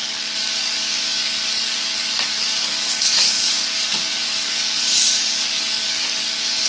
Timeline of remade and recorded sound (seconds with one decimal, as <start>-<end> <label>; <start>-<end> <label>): 0.0-6.7 remade